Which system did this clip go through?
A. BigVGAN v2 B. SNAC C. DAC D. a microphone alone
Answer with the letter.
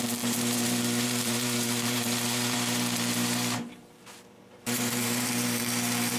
A